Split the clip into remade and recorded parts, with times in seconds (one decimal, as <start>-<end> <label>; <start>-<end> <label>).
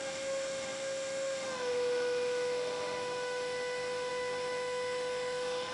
0.0-5.7 remade